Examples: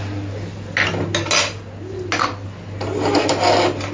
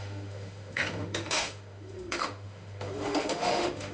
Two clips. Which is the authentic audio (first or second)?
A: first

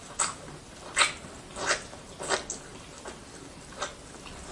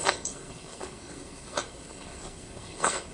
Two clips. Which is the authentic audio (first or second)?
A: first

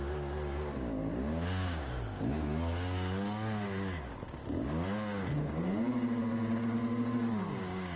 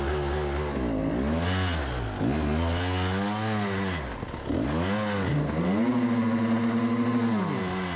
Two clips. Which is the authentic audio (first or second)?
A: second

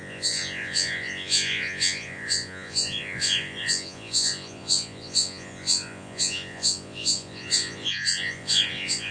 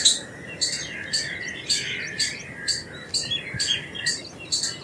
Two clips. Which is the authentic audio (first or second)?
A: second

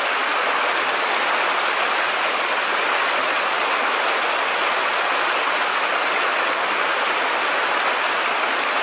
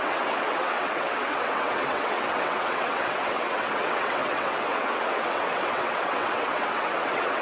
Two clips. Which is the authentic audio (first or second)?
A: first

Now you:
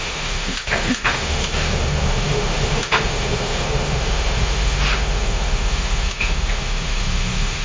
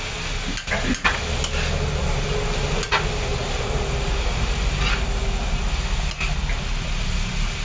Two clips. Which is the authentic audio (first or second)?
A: second